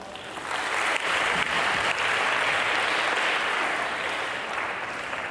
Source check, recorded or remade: recorded